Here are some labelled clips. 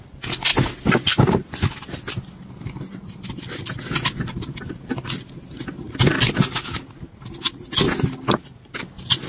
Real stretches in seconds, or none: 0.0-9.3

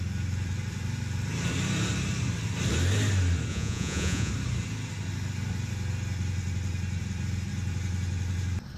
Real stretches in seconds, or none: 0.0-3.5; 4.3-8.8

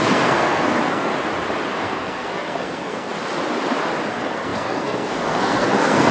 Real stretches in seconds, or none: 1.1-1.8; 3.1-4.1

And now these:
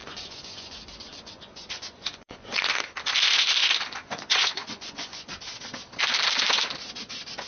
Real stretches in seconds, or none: 2.7-3.6; 5.3-7.5